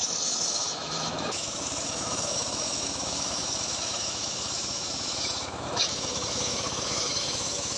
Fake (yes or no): yes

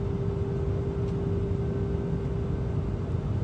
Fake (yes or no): no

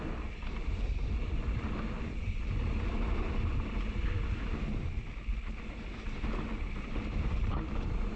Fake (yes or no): no